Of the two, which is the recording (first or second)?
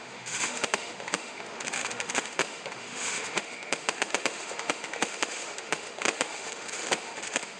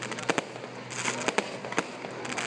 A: second